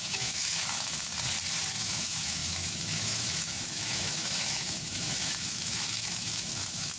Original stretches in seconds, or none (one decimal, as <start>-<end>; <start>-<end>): 1.1-1.7